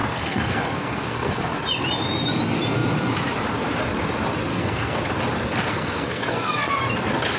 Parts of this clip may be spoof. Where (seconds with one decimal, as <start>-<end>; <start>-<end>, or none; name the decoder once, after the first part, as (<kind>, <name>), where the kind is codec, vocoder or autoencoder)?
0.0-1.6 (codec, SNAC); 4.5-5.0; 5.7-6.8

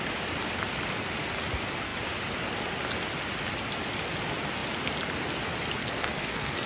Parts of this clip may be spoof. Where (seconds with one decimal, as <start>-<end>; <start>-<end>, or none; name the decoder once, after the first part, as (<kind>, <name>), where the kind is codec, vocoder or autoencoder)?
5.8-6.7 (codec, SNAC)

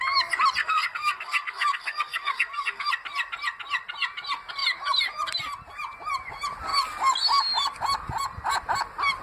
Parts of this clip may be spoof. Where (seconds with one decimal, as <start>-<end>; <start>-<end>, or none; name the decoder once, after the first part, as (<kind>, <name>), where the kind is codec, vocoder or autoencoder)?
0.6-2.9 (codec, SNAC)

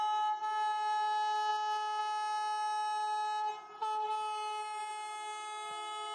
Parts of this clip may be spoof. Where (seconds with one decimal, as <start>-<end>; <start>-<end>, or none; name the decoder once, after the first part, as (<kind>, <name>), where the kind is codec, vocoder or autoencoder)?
none

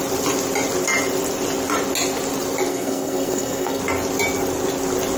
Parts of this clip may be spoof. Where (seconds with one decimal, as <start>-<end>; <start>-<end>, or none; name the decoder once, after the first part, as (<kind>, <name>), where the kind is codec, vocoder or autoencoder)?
2.7-3.8 (codec, SNAC)

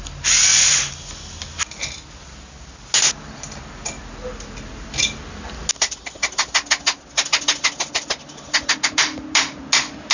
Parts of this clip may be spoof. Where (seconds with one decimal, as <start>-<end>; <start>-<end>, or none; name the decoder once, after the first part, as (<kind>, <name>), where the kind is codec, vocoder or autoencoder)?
none

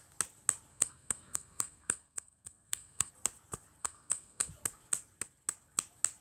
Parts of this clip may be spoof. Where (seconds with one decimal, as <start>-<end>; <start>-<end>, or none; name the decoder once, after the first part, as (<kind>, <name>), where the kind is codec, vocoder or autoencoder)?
0.7-3.1 (codec, SNAC); 3.8-4.5

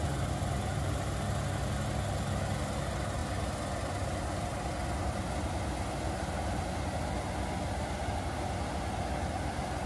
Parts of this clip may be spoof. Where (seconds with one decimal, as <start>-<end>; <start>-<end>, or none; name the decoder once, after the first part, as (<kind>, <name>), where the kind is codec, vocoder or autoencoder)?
none